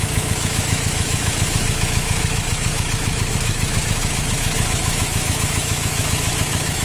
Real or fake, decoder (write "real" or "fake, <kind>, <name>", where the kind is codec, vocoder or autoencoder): fake, autoencoder, DAC-VAE